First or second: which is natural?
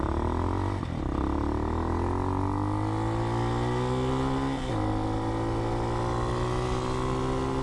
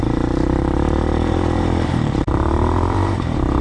first